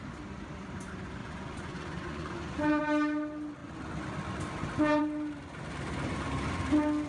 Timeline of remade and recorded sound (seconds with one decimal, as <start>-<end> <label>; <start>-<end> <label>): 0.0-1.2 recorded; 1.2-2.8 remade; 2.8-7.1 recorded